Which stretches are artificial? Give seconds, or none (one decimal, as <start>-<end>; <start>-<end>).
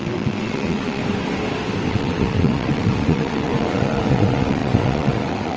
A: 0.0-1.0; 1.9-5.6